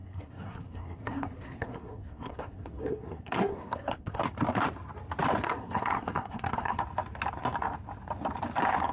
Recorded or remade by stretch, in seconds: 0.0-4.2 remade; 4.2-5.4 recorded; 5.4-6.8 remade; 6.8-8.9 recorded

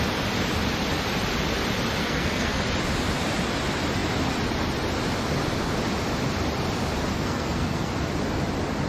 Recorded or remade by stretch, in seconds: 0.0-2.0 recorded; 2.0-2.6 remade; 2.6-7.1 recorded; 7.1-7.9 remade; 7.9-8.9 recorded

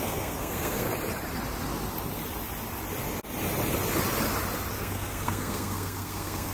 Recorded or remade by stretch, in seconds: 0.0-0.9 remade; 0.9-4.8 recorded; 4.8-6.5 remade

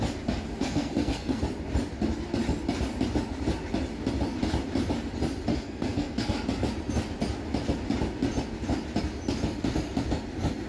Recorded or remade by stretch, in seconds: 0.0-0.6 recorded; 0.6-1.4 remade; 1.4-5.5 recorded; 5.5-6.3 remade; 6.3-10.7 recorded

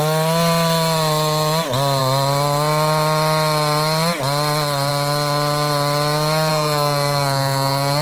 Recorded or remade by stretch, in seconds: 0.0-6.5 recorded; 6.5-8.0 remade